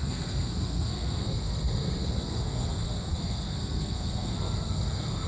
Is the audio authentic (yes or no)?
no